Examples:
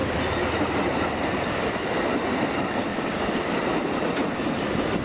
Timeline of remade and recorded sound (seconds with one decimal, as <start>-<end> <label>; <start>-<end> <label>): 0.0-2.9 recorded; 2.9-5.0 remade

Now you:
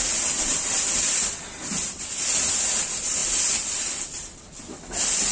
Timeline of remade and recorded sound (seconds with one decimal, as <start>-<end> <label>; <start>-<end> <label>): 0.0-5.3 recorded

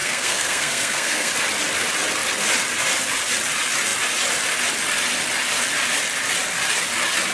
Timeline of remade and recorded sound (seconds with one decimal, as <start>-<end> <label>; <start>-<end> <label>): 0.0-1.3 remade; 1.3-7.3 recorded

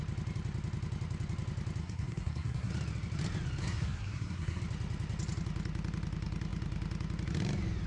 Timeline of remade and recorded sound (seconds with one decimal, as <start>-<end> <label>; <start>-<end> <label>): 0.0-1.8 recorded; 1.8-2.7 remade; 2.7-3.6 recorded; 3.6-4.6 remade; 4.6-7.9 recorded

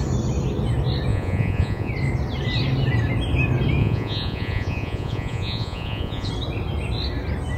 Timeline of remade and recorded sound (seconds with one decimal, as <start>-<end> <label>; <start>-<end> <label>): 0.0-1.1 recorded; 1.1-1.9 remade; 1.9-3.8 recorded; 3.8-6.3 remade; 6.3-7.6 recorded

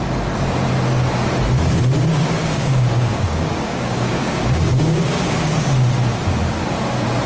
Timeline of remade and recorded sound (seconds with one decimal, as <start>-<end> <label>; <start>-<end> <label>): 0.0-2.1 recorded; 2.1-5.5 remade; 5.5-7.3 recorded

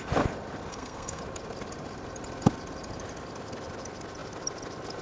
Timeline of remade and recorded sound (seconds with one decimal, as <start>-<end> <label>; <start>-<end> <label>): 0.0-0.7 recorded; 0.7-1.2 remade; 1.2-5.0 recorded